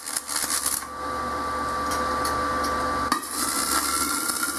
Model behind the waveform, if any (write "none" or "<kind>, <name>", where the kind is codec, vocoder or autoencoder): none